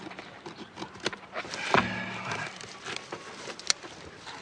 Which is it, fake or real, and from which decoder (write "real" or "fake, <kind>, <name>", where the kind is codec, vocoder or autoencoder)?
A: real